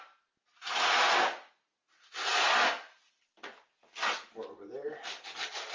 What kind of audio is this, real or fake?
real